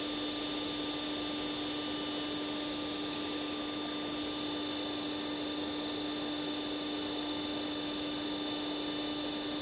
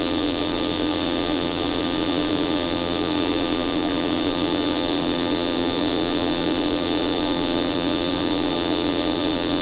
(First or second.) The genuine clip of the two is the first